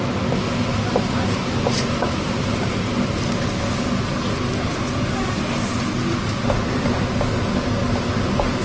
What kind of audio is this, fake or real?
real